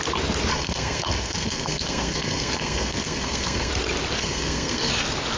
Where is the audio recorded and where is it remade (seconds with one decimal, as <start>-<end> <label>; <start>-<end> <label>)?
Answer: 0.0-0.5 recorded; 0.5-3.7 remade; 3.7-4.2 recorded; 4.2-4.9 remade; 4.9-5.4 recorded